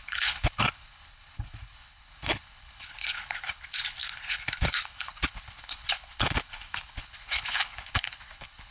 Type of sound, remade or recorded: remade